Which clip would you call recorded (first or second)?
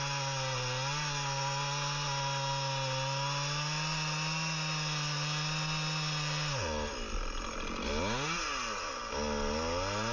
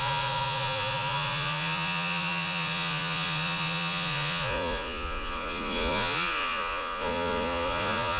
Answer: first